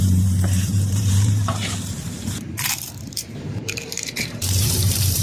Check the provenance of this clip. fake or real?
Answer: fake